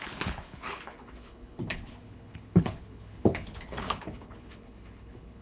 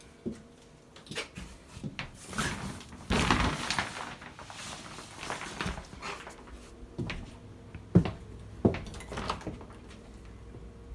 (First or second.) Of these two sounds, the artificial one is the first